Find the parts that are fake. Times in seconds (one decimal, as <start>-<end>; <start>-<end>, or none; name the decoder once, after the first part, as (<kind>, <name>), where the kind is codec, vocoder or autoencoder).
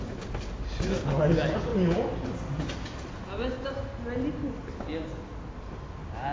none